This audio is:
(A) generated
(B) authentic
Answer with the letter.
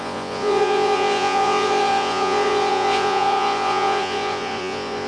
A